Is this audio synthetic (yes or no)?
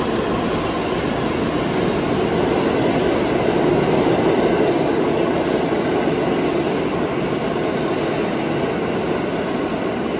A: no